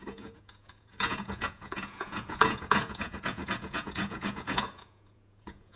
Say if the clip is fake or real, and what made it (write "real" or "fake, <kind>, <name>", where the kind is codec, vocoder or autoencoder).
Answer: fake, vocoder, Vocos